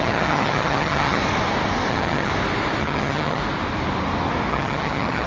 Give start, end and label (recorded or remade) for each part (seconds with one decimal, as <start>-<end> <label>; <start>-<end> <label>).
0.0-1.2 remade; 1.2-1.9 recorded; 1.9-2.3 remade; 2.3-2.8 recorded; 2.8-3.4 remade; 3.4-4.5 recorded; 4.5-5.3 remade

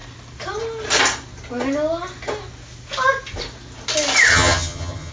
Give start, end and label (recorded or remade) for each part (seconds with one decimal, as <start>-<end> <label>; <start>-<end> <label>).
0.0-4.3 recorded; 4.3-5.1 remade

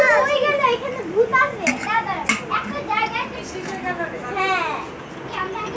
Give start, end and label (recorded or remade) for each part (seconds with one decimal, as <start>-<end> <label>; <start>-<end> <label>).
0.0-5.8 recorded

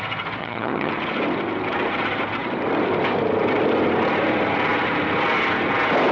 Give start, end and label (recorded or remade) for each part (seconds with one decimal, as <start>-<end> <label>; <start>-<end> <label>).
0.0-0.4 recorded; 0.4-0.9 remade; 0.9-6.1 recorded